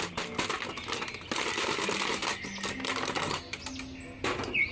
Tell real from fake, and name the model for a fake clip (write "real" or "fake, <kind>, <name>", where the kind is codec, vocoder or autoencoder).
real